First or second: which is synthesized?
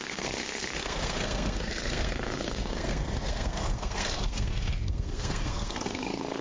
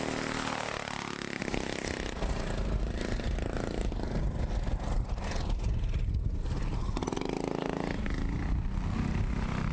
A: first